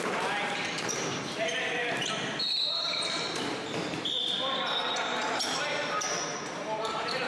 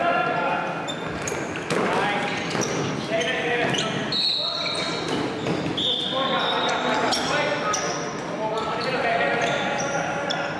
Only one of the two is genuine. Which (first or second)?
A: second